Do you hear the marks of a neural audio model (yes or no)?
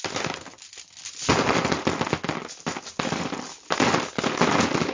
no